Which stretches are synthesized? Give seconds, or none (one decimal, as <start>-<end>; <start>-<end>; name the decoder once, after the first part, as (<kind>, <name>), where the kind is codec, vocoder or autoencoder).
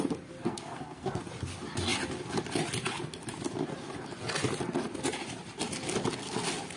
0.4-1.2 (codec, SNAC)